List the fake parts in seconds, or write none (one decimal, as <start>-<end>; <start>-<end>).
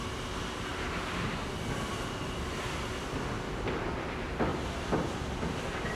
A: 0.7-1.9; 4.5-5.1